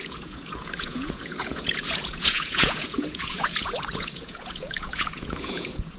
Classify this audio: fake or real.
fake